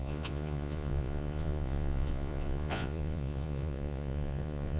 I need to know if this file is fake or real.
fake